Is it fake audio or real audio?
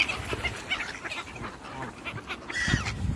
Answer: real